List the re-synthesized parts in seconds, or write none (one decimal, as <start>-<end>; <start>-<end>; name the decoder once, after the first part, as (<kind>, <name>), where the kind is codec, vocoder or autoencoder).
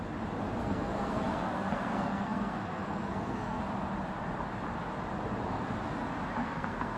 0.6-3.6 (codec, SNAC); 6.4-7.0